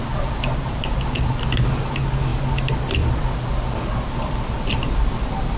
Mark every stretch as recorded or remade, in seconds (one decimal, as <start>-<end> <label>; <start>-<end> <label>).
0.0-5.6 recorded